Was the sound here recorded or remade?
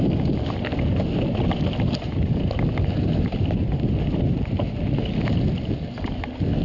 recorded